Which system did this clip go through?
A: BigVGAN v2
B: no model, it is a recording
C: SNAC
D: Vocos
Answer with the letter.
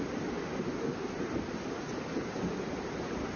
B